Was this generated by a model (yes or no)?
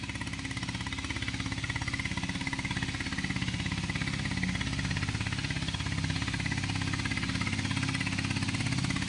no